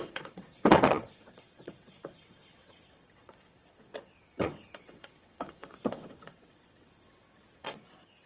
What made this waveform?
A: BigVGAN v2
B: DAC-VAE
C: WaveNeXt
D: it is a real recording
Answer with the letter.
C